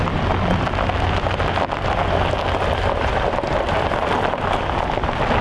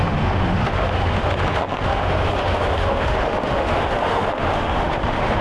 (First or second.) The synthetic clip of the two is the second